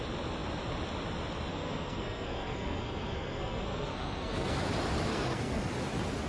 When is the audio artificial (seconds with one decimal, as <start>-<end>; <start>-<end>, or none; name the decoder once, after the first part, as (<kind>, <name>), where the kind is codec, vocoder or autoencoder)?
1.5-4.6 (codec, SNAC); 5.1-5.7